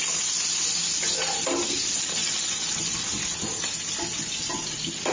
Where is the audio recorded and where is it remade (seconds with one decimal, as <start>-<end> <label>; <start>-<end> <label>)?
0.0-5.1 recorded